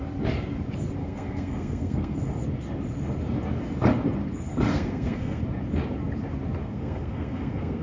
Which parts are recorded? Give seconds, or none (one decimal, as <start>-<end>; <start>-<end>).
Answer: 0.0-1.0; 2.2-4.7; 5.4-6.6